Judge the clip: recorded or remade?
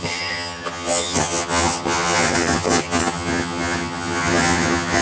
remade